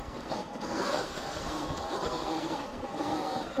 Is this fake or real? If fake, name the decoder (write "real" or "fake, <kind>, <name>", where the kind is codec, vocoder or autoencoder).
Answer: fake, codec, SNAC